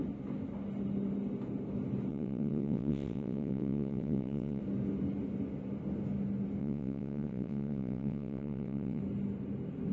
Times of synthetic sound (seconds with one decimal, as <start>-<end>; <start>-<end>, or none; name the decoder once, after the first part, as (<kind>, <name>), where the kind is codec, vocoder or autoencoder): 2.1-4.6 (vocoder, WaveNeXt); 6.6-9.0